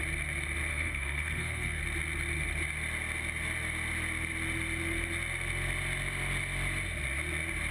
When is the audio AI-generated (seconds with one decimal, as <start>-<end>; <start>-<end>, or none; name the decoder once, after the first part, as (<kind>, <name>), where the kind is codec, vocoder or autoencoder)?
0.7-1.8 (codec, SNAC)